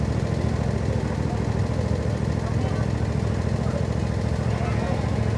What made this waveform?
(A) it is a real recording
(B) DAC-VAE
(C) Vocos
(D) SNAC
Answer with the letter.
A